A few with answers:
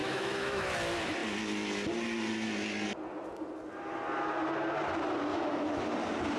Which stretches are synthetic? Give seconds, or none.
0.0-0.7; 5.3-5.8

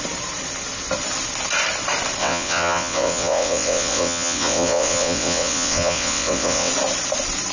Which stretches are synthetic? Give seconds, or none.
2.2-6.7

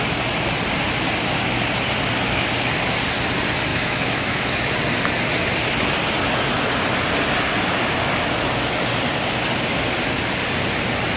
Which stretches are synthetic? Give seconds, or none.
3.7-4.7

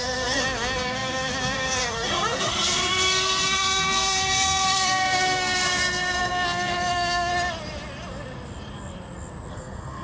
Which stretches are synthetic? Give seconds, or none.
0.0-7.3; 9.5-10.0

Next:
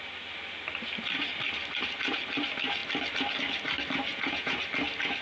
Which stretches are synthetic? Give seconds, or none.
4.1-4.6

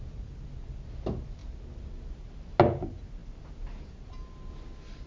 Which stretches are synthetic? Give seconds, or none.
none